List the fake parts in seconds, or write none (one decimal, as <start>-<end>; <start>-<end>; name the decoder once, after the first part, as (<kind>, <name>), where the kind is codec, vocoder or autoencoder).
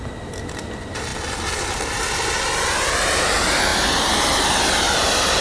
none